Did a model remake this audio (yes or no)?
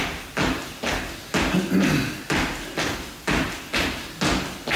no